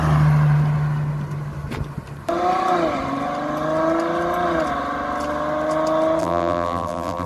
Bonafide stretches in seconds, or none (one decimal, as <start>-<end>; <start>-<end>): 0.0-6.2